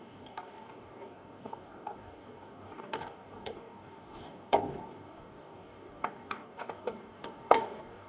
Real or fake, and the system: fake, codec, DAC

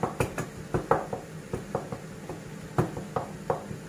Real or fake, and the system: real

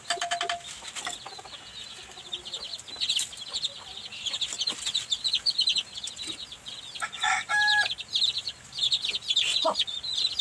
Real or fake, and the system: real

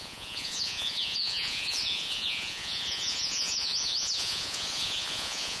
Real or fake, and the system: fake, vocoder, Vocos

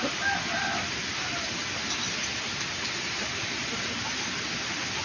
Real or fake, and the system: real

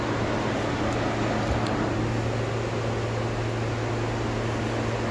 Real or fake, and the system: real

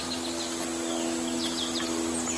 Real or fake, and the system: real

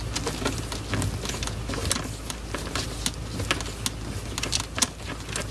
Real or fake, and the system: real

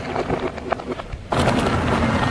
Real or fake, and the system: real